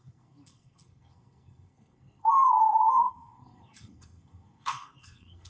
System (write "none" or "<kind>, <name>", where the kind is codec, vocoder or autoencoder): codec, SNAC